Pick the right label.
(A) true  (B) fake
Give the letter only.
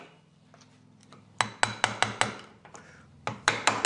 A